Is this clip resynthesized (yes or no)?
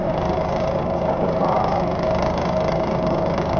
yes